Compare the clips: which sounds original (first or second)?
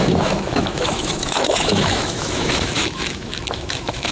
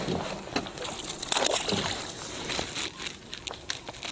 second